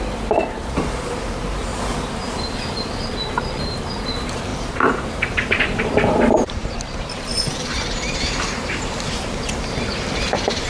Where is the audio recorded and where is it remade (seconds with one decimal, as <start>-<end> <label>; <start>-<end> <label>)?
0.0-1.7 remade; 1.7-2.9 recorded; 2.9-10.7 remade